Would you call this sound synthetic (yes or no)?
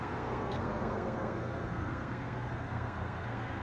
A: yes